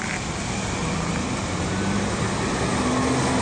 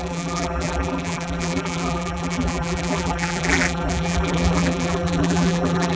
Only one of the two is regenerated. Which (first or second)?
second